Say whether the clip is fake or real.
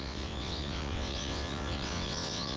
fake